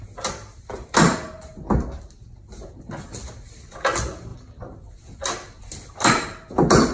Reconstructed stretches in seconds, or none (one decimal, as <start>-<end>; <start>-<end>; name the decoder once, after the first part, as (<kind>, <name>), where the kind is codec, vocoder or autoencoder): none